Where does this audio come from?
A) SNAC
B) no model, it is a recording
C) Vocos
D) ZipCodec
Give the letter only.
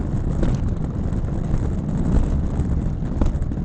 B